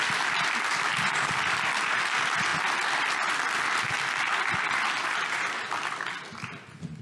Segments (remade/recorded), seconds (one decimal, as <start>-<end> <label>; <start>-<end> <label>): 0.0-5.0 recorded; 5.0-5.7 remade; 5.7-7.0 recorded